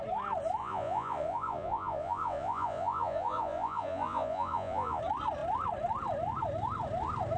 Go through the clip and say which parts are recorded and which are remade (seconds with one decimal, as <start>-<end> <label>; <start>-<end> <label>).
0.0-0.6 recorded; 0.6-5.0 remade; 5.0-7.4 recorded